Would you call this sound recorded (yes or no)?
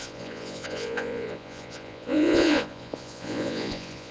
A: no